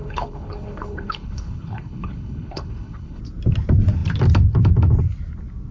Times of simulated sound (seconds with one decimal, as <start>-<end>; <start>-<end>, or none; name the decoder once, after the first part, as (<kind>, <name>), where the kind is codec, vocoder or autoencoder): 0.0-3.2 (codec, HILCodec)